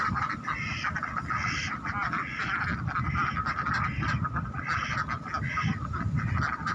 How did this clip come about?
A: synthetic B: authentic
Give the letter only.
B